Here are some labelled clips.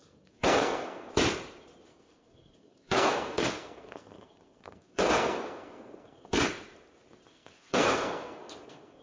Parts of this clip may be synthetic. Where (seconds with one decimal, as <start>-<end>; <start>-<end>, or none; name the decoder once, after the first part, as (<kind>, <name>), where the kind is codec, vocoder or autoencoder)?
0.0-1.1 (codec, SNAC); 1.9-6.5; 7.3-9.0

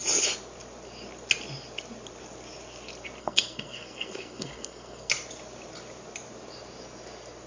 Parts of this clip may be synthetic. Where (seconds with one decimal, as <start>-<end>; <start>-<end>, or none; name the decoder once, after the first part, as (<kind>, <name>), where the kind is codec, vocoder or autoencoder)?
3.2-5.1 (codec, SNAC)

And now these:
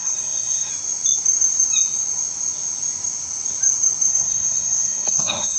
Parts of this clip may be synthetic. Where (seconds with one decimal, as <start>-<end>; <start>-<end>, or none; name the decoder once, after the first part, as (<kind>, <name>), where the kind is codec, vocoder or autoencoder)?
0.0-0.7 (codec, SNAC); 4.1-5.6

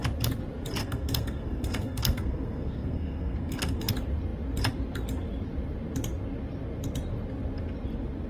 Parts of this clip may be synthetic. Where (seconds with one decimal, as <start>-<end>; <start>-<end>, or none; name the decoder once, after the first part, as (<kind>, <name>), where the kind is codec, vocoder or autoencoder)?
0.8-3.9 (codec, SNAC)

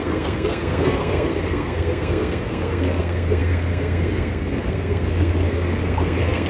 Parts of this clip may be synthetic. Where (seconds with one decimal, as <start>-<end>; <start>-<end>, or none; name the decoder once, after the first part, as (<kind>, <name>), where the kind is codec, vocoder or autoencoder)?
0.0-6.5 (codec, SNAC)